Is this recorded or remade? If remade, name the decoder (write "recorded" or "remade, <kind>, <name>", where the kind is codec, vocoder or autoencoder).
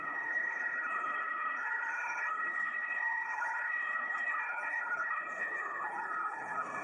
remade, codec, HILCodec